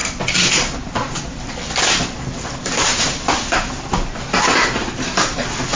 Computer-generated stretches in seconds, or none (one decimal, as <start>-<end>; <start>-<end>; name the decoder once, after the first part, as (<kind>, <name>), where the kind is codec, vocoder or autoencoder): none